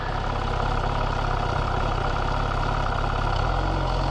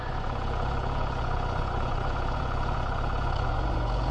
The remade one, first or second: second